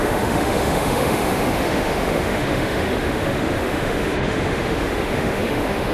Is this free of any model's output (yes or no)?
no